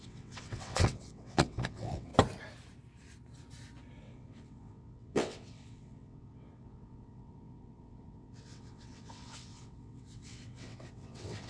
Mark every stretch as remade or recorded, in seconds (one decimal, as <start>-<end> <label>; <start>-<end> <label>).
0.0-2.1 remade; 2.1-4.0 recorded; 4.0-11.5 remade